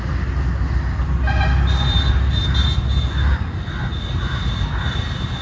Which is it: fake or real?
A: real